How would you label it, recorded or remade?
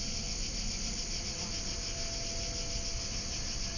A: recorded